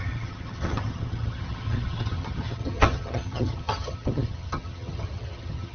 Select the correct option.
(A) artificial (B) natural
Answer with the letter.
A